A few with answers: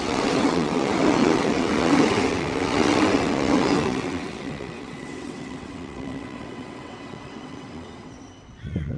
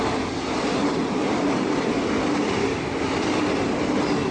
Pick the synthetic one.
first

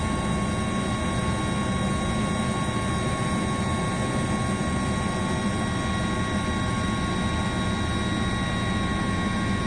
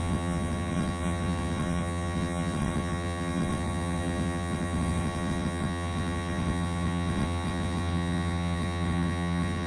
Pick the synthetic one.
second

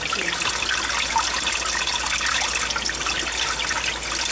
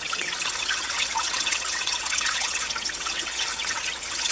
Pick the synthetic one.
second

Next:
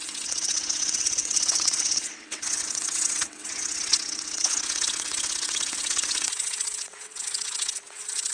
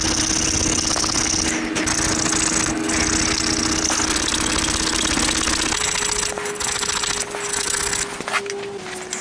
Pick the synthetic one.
first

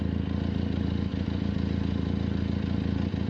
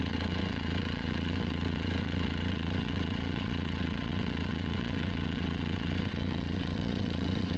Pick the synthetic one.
second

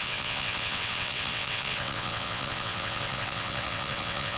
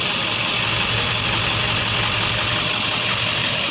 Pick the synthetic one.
first